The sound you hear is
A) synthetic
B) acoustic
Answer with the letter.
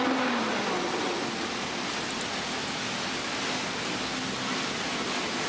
B